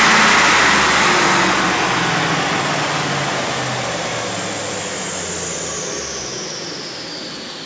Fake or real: real